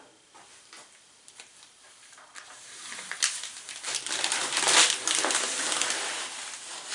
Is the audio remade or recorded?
recorded